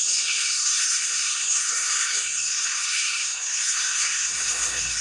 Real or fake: fake